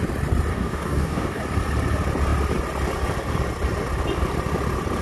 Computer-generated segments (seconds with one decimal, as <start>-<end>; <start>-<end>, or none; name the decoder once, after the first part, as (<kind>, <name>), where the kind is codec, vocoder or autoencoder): 0.5-1.4 (codec, DAC)